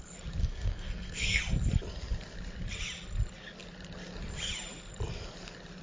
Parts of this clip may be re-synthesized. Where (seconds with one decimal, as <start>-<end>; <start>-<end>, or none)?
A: 0.4-1.4